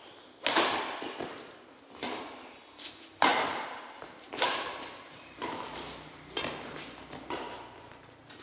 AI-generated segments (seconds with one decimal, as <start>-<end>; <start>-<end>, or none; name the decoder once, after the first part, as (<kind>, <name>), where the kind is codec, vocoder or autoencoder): 3.3-5.5 (vocoder, BigVGAN v2)